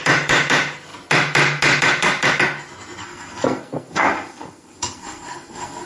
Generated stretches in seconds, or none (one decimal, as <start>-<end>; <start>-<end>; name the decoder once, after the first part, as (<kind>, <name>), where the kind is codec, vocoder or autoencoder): 3.0-5.9 (codec, SNAC)